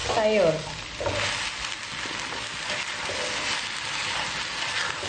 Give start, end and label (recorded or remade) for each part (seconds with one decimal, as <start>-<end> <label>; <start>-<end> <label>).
0.0-5.1 recorded